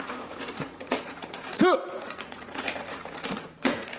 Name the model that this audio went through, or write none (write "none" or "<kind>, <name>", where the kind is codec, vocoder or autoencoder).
vocoder, Vocos